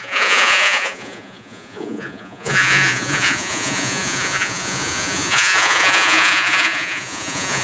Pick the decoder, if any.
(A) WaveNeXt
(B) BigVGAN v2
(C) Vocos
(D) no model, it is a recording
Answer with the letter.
C